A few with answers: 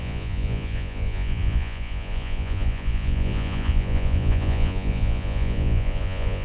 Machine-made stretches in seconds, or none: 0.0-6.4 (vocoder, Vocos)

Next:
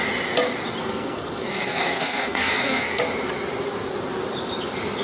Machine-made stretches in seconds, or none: 0.8-3.0 (codec, SNAC)

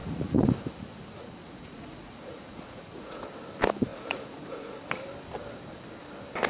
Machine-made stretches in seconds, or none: 0.0-0.5 (vocoder, Vocos); 1.4-3.3; 3.9-4.8

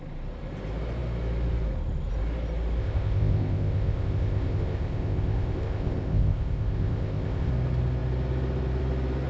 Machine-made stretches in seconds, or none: 2.8-7.5 (codec, ZipCodec)

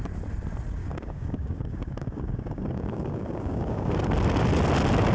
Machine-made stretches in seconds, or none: 0.8-3.9 (codec, DAC)

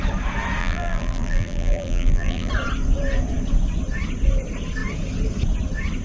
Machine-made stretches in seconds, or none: 0.6-2.5 (vocoder, BigVGAN v2)